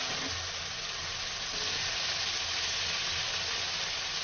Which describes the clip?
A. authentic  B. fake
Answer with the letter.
A